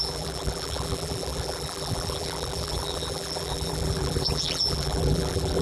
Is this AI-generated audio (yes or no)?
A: yes